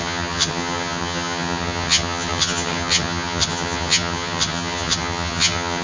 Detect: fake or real fake